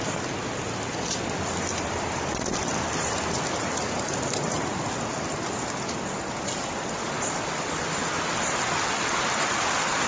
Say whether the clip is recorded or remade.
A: recorded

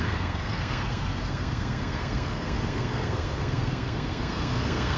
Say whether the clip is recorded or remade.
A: remade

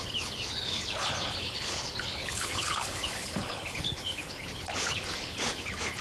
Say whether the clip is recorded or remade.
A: remade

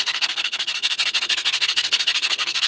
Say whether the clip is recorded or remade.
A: remade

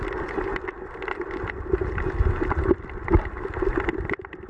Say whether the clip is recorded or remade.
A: recorded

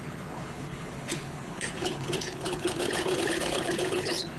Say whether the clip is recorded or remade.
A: remade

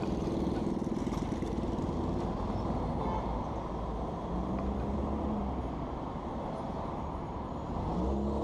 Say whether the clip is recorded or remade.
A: recorded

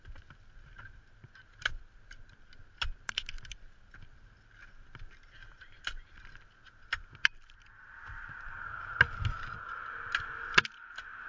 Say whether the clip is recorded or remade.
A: recorded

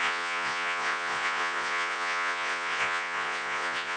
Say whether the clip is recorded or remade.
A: remade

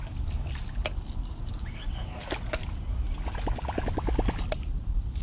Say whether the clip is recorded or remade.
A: recorded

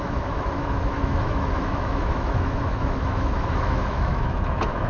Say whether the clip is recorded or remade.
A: remade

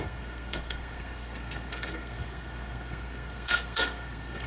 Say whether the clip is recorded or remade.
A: remade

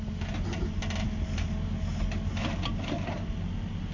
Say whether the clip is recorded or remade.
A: recorded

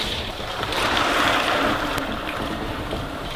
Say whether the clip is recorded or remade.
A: remade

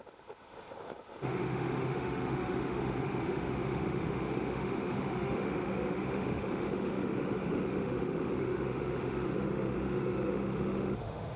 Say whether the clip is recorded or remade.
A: remade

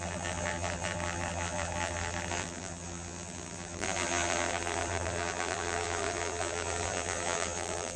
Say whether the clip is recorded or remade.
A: remade